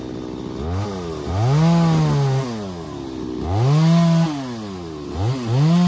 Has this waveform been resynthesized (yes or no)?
no